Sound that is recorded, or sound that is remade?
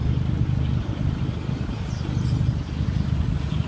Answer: recorded